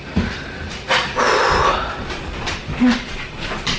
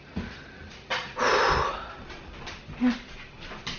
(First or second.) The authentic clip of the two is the second